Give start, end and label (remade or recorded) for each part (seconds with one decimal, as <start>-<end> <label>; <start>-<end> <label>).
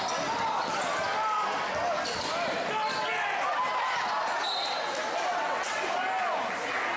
0.0-5.3 recorded; 5.3-5.9 remade; 5.9-7.0 recorded